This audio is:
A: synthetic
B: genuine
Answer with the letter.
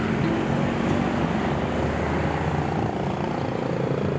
B